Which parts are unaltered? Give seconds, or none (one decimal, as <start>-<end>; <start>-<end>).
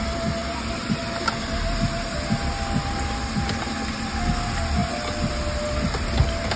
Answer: 0.0-6.6